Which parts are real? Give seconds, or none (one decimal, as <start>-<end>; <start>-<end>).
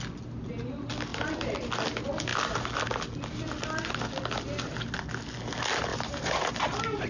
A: 0.0-1.1; 1.7-5.9; 6.5-7.1